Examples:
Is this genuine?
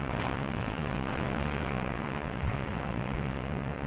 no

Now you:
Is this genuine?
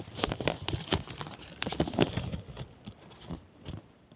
yes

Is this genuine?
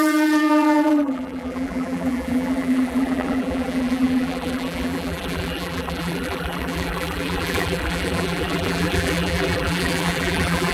no